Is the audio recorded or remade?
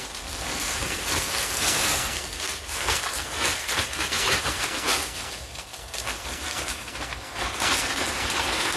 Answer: remade